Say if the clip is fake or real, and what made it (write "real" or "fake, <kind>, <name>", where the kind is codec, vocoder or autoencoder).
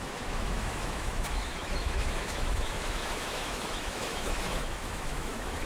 fake, autoencoder, DAC-VAE